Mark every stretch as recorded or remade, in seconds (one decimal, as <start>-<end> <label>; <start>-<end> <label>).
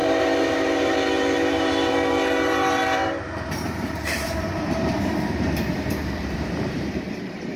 0.0-7.6 remade